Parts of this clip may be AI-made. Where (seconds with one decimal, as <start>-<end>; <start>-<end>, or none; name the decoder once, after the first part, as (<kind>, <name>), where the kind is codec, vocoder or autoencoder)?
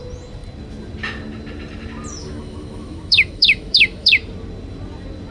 2.2-4.1 (autoencoder, DAC-VAE)